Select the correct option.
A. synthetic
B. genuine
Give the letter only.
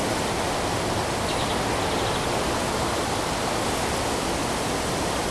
B